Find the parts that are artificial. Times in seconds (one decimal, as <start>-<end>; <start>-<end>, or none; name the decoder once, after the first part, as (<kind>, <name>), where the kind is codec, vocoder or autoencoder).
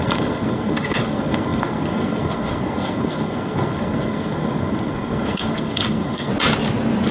0.0-6.3 (codec, SNAC)